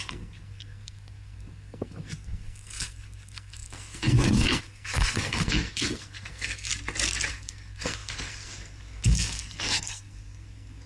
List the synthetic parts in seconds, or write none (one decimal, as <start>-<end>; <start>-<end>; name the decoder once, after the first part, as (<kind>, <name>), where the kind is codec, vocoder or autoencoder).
0.0-6.7 (codec, SNAC); 7.3-10.9